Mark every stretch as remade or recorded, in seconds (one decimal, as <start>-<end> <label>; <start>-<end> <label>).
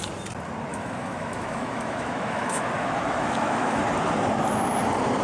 0.0-0.7 recorded; 0.7-3.8 remade; 3.8-5.2 recorded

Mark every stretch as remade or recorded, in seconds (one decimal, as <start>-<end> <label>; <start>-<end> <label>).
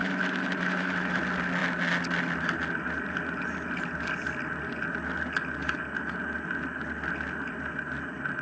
0.0-1.2 remade; 1.2-8.4 recorded